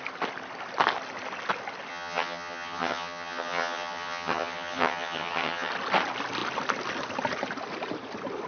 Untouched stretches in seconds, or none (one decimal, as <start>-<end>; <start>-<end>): 0.0-1.9; 5.7-8.5